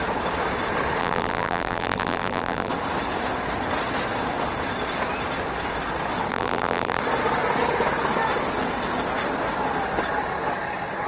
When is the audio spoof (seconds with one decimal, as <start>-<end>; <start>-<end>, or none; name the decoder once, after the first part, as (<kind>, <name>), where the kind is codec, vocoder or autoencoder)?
1.0-2.7 (vocoder, BigVGAN v2); 6.3-7.0